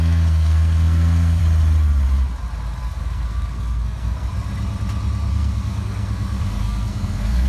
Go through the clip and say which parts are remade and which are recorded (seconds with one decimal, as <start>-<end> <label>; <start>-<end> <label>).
0.0-1.4 remade; 1.4-2.8 recorded; 2.8-4.3 remade; 4.3-5.3 recorded; 5.3-7.5 remade